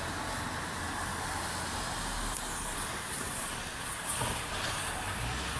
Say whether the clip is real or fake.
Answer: real